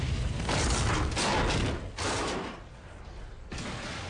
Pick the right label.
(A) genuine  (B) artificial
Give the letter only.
A